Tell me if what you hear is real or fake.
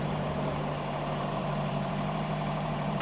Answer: fake